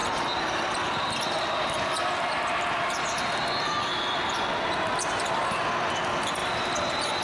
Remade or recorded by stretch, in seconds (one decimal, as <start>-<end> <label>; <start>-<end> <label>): 0.0-7.2 recorded